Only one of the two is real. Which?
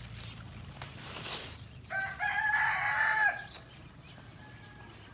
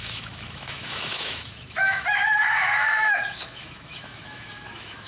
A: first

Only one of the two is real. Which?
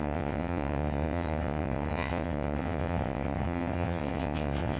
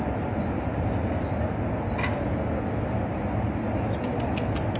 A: second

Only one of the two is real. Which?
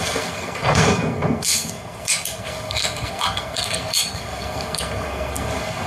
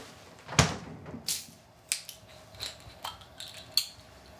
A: second